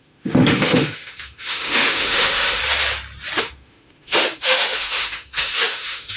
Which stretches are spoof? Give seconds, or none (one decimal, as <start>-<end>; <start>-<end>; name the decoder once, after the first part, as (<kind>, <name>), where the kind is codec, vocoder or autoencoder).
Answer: 0.0-2.6 (autoencoder, DAC-VAE); 3.4-6.2